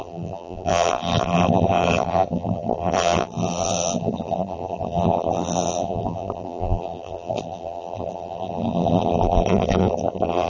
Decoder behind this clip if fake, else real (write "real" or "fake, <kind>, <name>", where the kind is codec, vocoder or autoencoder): fake, vocoder, BigVGAN v2